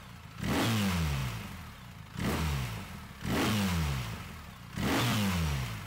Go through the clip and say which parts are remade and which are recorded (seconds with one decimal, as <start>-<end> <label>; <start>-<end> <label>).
0.0-5.9 recorded